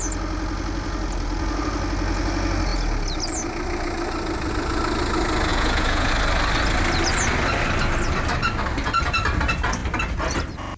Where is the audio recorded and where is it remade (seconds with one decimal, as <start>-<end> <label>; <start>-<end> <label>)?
0.0-5.5 recorded; 5.5-6.1 remade; 6.1-10.8 recorded